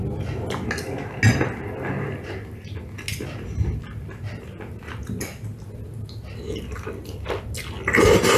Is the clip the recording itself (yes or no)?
yes